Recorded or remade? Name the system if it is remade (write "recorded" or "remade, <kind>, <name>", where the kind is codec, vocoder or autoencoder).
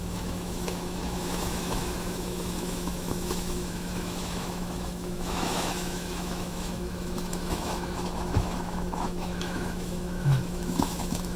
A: remade, autoencoder, DAC-VAE